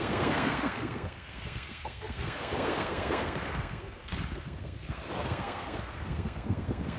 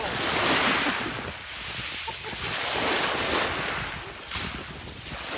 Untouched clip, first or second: second